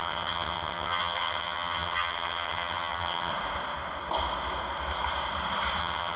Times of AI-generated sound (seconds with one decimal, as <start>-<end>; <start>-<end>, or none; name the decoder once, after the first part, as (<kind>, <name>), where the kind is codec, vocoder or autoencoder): 0.0-3.3 (vocoder, HiFi-GAN); 5.8-6.2